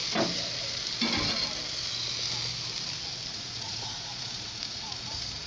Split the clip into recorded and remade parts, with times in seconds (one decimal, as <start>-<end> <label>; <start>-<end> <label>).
0.0-3.3 recorded; 3.3-5.5 remade